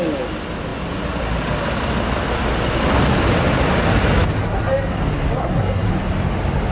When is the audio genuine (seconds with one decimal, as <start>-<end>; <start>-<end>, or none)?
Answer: 0.0-5.4; 5.9-6.7